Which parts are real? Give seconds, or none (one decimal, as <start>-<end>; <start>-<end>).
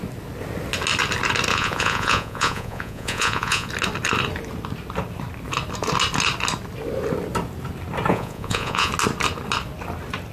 0.0-1.5; 3.7-8.1; 8.9-10.3